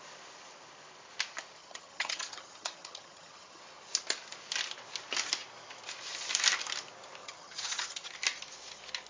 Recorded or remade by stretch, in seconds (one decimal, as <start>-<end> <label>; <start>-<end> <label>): 0.0-1.6 recorded; 1.6-3.6 remade; 3.6-7.2 recorded; 7.2-8.1 remade; 8.1-9.1 recorded